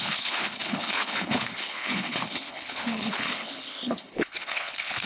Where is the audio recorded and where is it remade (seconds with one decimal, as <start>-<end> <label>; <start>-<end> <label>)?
0.0-5.1 remade